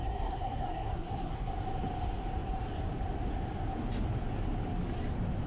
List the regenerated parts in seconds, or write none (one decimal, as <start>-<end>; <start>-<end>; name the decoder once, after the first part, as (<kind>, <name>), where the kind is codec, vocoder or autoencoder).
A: 0.0-1.5 (codec, SNAC)